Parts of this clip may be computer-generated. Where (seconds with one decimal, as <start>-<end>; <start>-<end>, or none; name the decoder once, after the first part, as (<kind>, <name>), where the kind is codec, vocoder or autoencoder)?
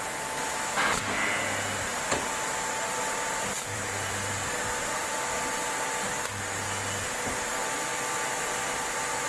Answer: 1.9-4.5 (vocoder, BigVGAN v2); 7.9-9.3